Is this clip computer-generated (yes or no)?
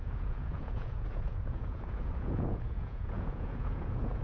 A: yes